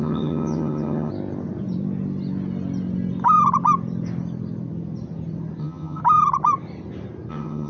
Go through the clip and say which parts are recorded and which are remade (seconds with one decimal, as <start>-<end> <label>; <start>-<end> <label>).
0.0-1.1 remade; 1.1-5.6 recorded; 5.6-6.0 remade; 6.0-7.3 recorded; 7.3-7.7 remade